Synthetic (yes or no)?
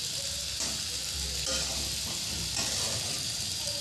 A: no